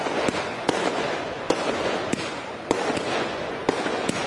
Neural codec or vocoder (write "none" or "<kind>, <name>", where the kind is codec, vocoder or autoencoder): vocoder, Vocos